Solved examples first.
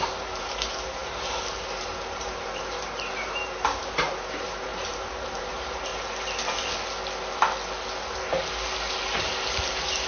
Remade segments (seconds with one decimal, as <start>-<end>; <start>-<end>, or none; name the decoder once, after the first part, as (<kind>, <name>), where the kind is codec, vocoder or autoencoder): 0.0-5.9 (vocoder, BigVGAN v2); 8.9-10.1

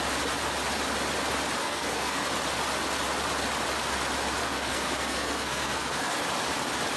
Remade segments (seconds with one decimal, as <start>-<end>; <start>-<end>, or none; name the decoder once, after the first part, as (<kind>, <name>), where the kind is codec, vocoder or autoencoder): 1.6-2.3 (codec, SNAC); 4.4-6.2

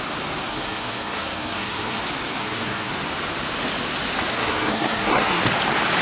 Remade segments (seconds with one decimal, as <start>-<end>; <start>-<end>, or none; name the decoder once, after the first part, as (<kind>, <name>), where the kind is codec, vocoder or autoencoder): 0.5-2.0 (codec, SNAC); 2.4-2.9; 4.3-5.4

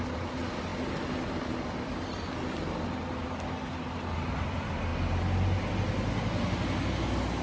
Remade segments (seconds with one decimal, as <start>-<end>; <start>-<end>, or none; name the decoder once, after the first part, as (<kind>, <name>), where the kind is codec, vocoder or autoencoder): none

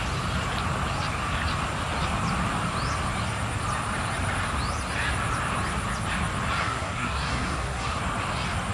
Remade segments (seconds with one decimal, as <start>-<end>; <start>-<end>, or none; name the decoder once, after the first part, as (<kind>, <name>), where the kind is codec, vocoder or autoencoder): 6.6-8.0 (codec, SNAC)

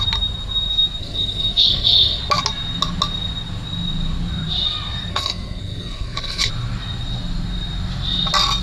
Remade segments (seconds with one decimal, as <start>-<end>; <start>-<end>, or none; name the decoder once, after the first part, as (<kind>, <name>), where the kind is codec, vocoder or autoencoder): 1.0-2.2 (codec, SNAC); 5.1-6.5